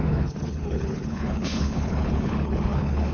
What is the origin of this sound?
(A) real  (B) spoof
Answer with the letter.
B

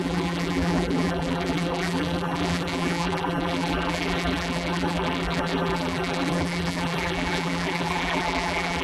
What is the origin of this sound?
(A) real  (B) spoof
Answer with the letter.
B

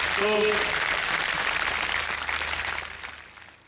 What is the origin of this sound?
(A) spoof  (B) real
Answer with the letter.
B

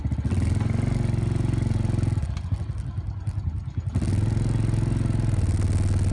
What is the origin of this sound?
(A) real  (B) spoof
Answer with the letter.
A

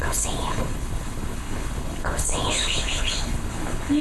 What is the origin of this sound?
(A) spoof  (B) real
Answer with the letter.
A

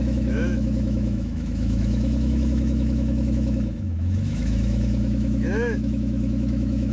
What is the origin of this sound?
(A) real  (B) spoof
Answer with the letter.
B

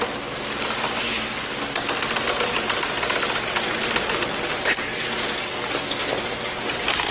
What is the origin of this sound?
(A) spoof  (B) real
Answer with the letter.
B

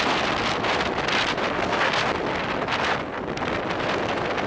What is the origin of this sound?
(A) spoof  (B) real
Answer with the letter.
B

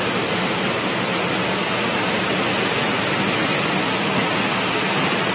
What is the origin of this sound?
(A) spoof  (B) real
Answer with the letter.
B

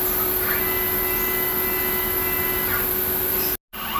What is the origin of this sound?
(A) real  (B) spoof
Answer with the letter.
A